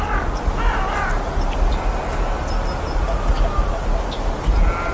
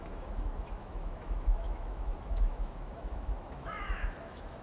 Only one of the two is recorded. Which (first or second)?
first